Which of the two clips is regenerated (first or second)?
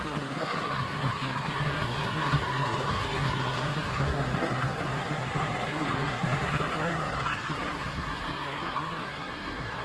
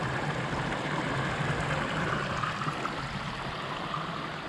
first